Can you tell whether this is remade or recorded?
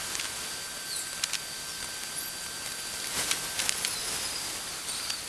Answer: recorded